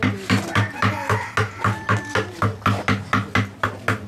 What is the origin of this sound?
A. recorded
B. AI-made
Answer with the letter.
A